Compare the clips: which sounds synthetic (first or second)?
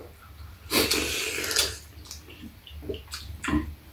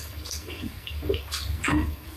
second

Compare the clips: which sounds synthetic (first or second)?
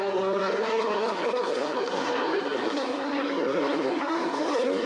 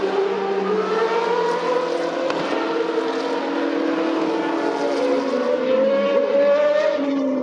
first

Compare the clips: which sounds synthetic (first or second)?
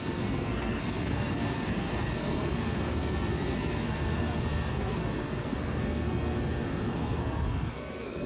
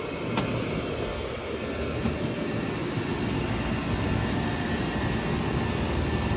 first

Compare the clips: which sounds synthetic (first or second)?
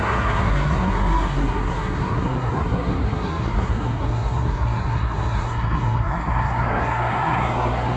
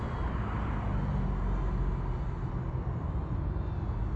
first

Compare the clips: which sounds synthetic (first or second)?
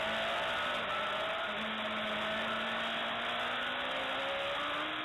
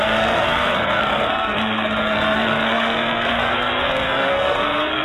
second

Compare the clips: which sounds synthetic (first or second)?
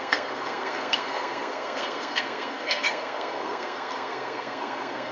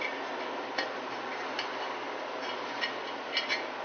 first